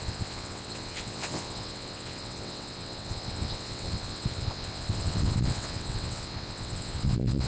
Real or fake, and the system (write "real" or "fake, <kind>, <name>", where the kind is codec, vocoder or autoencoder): fake, vocoder, WaveNeXt